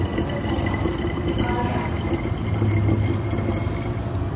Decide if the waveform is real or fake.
real